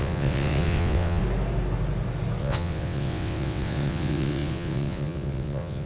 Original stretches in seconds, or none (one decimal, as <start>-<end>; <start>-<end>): 1.2-2.4